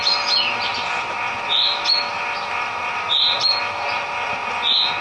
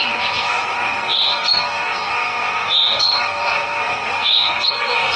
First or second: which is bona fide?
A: first